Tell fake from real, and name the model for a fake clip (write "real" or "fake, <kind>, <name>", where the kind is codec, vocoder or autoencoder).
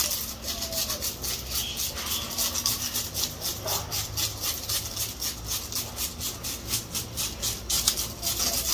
real